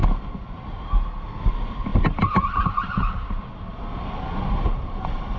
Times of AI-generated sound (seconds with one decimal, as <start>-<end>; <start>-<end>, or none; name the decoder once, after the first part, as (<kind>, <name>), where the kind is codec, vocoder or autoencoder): none